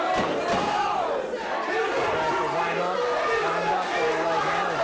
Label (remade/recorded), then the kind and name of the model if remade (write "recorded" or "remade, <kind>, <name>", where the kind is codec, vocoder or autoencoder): recorded